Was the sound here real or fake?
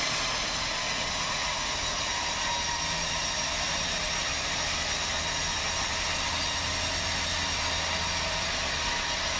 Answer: real